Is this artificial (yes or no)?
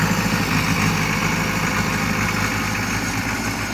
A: no